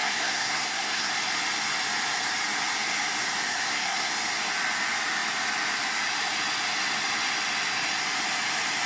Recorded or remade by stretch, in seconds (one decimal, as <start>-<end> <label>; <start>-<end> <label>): 0.0-1.1 remade; 1.1-3.5 recorded; 3.5-4.1 remade; 4.1-8.9 recorded